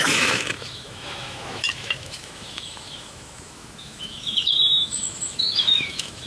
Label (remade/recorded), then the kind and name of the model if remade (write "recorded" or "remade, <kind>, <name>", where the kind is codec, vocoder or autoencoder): remade, autoencoder, DAC-VAE